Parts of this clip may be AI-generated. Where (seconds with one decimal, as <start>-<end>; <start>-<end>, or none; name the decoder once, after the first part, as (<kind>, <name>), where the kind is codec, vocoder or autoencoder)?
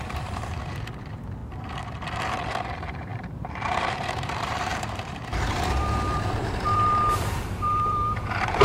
0.0-1.4 (vocoder, BigVGAN v2); 2.7-8.6